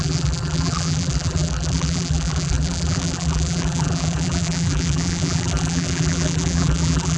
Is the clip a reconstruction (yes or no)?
yes